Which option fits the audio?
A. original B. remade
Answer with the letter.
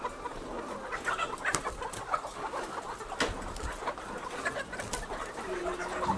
A